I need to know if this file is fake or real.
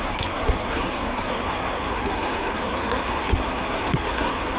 fake